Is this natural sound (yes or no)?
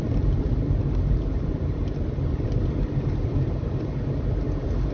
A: yes